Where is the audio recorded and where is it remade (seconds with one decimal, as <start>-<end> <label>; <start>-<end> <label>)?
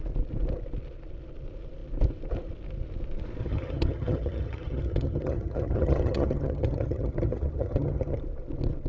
0.0-3.4 recorded; 3.4-8.2 remade; 8.2-8.9 recorded